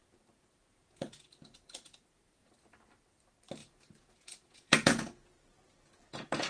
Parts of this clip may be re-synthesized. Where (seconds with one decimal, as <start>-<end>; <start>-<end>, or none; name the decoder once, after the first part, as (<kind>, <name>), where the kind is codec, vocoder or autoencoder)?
0.0-2.5 (vocoder, Vocos); 3.6-6.5